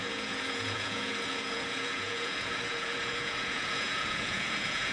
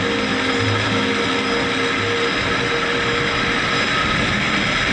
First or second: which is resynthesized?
first